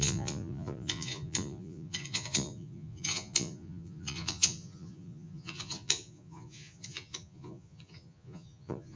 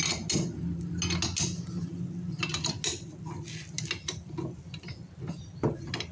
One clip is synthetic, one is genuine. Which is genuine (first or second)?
second